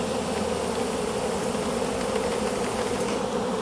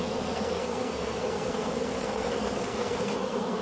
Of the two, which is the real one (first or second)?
first